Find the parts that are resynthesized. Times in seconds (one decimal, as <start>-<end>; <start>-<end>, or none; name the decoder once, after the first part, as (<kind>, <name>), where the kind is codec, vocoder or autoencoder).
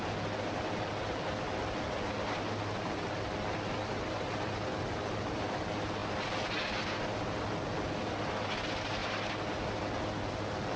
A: none